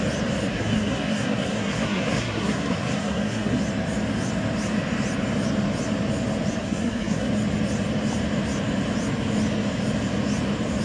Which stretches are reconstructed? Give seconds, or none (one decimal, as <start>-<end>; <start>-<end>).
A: 0.5-3.6; 6.6-7.3